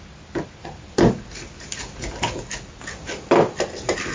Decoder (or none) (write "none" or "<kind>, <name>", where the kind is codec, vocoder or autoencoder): none